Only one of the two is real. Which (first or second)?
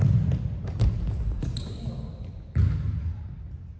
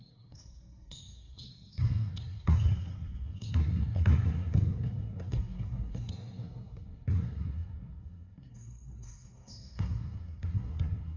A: first